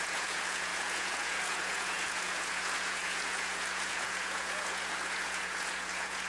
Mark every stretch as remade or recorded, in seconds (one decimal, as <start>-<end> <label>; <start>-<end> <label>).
0.0-6.3 remade